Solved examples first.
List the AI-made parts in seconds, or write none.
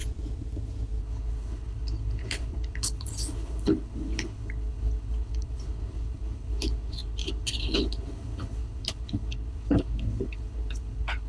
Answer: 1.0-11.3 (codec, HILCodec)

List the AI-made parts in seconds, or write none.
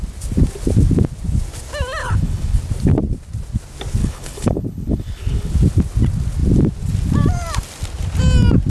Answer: 2.0-2.6 (codec, HILCodec); 4.0-5.5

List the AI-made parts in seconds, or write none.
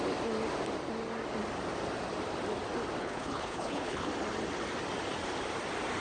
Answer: 3.0-4.1 (codec, HILCodec)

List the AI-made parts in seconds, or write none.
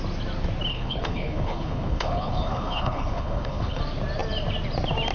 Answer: 0.7-3.8 (codec, HILCodec)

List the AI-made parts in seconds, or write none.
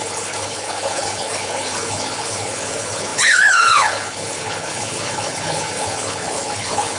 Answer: 0.0-7.0 (codec, HILCodec)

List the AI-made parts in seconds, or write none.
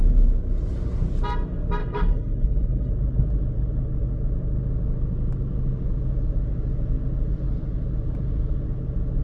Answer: 1.8-2.9 (codec, HILCodec)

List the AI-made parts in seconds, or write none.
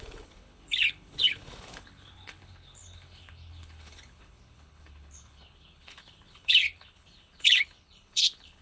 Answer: 0.0-8.6 (codec, HILCodec)